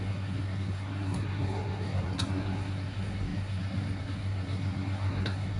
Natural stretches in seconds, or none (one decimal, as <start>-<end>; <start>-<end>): none